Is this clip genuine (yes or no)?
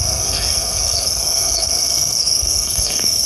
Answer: no